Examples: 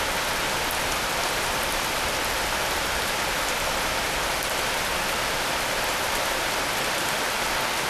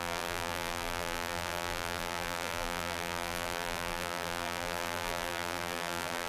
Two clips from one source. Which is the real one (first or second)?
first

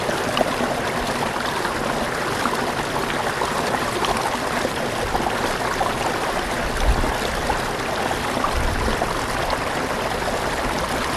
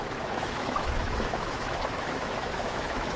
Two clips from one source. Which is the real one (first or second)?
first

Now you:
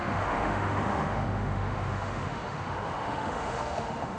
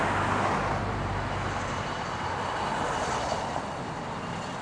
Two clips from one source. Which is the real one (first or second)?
second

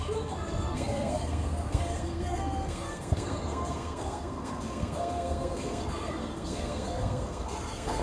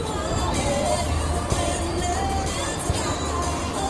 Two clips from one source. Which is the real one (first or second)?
second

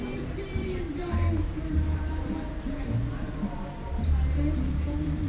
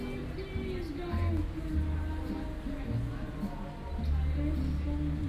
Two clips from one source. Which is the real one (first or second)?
second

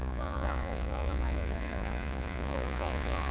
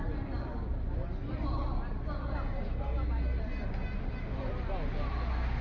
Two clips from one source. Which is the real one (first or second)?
second